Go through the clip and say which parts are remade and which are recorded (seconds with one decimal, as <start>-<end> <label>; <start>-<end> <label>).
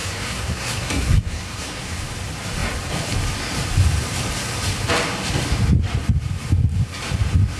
0.0-2.0 remade; 2.0-7.6 recorded